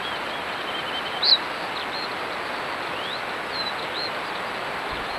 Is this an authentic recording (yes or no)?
yes